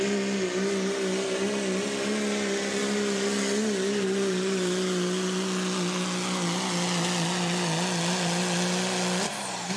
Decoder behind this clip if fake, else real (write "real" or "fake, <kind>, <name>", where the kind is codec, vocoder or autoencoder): real